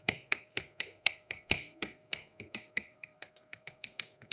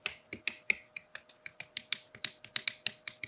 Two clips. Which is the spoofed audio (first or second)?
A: first